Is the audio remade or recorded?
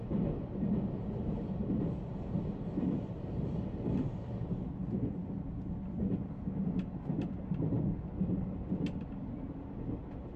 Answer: recorded